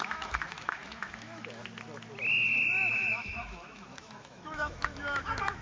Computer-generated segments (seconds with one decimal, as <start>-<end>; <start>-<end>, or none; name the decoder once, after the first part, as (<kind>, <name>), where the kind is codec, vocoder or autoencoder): 0.0-1.6 (autoencoder, DAC-VAE); 2.9-5.6

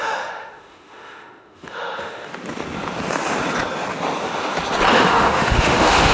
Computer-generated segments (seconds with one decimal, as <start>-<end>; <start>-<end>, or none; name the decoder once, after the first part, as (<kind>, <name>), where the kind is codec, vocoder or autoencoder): 0.0-2.3 (autoencoder, DAC-VAE); 4.9-6.1